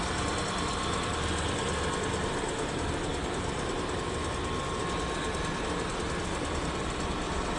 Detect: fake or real real